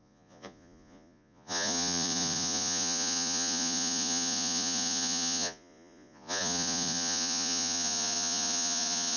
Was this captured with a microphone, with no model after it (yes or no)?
no